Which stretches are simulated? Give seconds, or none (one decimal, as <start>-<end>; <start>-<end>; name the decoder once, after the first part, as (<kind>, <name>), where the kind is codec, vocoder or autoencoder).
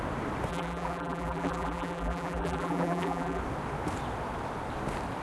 0.5-3.4 (vocoder, BigVGAN v2)